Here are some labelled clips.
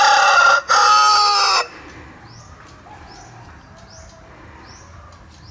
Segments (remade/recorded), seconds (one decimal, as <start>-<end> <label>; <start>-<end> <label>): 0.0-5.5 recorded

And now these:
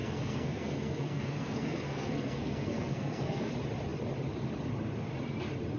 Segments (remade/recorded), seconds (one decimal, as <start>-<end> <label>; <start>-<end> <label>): 0.0-3.5 remade; 3.5-5.8 recorded

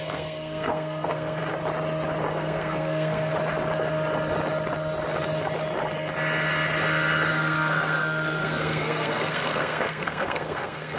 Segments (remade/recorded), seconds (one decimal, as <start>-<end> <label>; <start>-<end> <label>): 0.0-1.4 remade; 1.4-2.3 recorded; 2.3-3.3 remade; 3.3-7.3 recorded; 7.3-11.0 remade

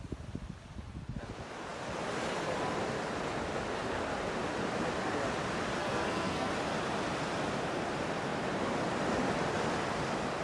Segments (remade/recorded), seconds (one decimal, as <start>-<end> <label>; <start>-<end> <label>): 0.0-5.8 recorded; 5.8-6.5 remade; 6.5-10.4 recorded

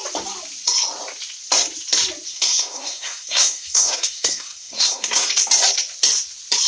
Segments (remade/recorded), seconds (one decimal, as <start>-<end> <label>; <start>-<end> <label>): 0.0-2.3 recorded; 2.3-5.3 remade; 5.3-6.7 recorded